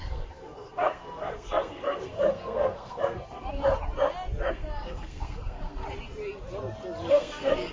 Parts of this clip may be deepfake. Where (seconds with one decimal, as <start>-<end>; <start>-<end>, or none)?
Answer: 0.0-3.6; 4.5-5.8; 7.1-7.7